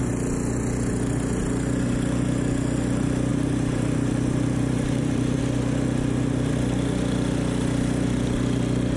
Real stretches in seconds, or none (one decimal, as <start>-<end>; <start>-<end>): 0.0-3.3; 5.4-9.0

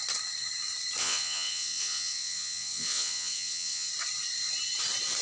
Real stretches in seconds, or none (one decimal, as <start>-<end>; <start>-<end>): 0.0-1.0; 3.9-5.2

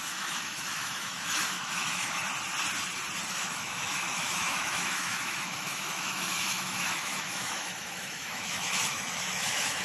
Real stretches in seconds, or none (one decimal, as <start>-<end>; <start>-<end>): 2.2-3.3

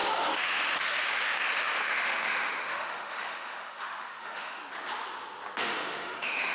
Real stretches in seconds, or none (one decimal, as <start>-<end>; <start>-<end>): 4.6-5.6

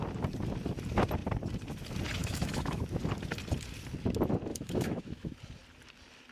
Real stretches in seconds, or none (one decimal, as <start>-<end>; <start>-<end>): 0.0-2.2; 2.8-4.5; 5.4-6.3